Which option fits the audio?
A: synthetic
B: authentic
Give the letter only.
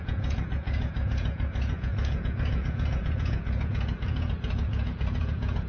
A